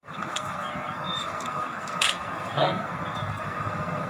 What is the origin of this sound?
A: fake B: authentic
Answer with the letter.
A